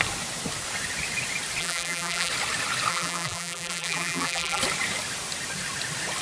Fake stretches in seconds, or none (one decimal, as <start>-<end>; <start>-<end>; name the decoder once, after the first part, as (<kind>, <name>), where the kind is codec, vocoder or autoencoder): 1.6-2.3 (vocoder, BigVGAN v2); 2.9-4.6